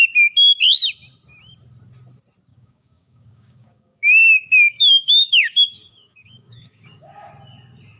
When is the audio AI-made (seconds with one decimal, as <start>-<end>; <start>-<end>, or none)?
2.5-7.3